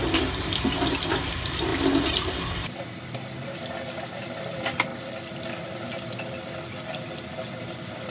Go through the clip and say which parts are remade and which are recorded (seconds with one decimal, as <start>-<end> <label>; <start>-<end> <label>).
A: 0.0-8.1 recorded